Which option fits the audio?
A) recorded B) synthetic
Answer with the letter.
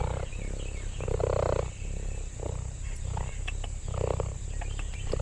A